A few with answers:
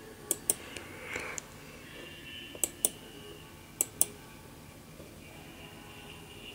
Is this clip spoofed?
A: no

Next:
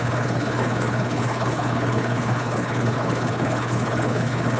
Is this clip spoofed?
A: yes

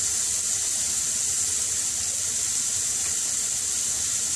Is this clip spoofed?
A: no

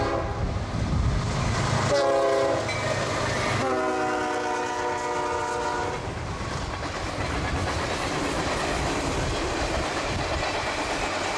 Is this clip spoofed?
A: no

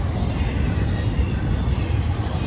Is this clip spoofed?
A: no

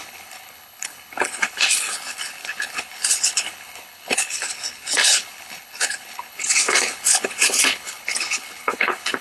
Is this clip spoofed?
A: yes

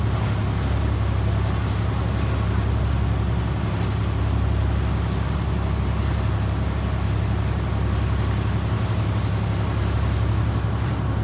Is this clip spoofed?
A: no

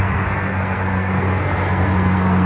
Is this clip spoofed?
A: yes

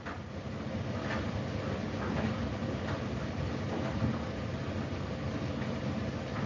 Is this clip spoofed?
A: no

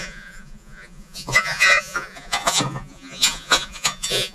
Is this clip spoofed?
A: yes